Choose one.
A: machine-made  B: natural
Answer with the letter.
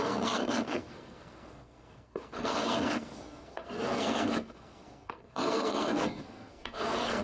A